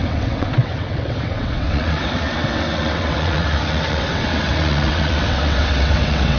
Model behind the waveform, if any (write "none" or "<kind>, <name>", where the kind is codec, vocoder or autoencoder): vocoder, WaveNeXt